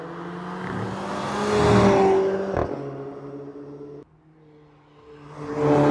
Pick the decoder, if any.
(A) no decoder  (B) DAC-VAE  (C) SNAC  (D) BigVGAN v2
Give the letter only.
A